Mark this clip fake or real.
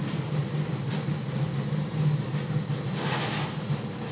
real